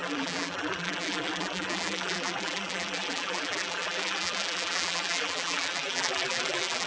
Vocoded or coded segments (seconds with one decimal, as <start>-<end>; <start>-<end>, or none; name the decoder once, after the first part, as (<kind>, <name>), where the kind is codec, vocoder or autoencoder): 0.0-6.9 (vocoder, BigVGAN v2)